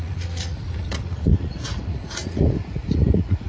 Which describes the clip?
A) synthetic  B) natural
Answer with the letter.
A